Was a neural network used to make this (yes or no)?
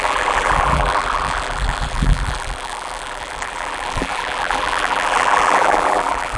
yes